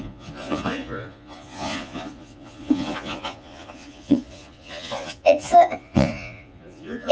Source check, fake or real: fake